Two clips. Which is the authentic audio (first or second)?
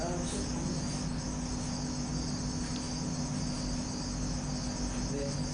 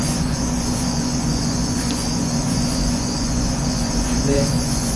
first